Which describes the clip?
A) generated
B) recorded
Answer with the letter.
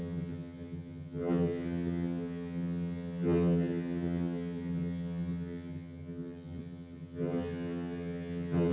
A